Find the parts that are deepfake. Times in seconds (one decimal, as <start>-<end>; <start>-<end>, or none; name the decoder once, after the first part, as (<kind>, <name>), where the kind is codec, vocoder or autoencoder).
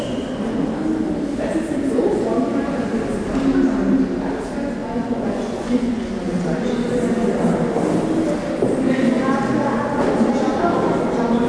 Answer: 4.8-6.7 (vocoder, Vocos)